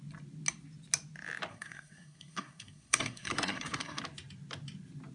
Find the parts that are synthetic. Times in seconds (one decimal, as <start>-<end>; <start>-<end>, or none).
1.5-4.0